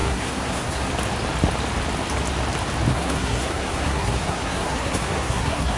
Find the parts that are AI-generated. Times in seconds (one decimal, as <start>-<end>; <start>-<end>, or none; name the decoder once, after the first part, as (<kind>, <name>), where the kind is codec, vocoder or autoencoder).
0.0-0.9 (codec, SNAC); 2.9-5.8